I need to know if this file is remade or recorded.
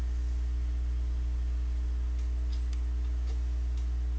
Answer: recorded